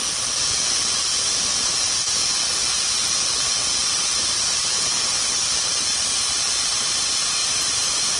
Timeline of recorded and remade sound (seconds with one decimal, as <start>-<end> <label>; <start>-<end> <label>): 0.0-7.4 recorded; 7.4-8.2 remade